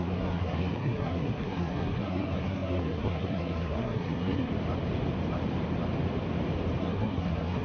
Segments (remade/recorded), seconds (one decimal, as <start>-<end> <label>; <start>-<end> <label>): 0.0-4.5 remade; 4.5-6.8 recorded; 6.8-7.6 remade